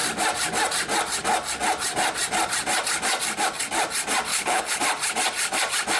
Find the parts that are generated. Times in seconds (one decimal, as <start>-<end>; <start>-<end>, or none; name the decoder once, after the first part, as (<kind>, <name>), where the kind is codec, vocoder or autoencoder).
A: 4.3-4.8 (codec, HILCodec)